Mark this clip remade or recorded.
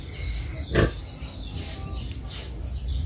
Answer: recorded